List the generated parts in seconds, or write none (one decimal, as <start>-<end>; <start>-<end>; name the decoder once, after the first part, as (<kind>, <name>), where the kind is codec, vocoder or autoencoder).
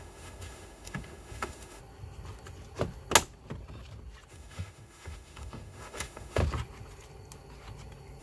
0.0-1.8 (autoencoder, DAC-VAE); 4.3-6.4